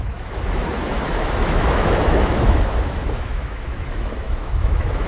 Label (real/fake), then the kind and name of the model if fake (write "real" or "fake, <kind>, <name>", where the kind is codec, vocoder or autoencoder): fake, autoencoder, DAC-VAE